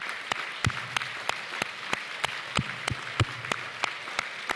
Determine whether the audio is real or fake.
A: real